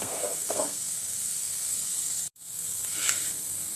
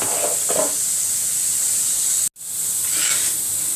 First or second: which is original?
second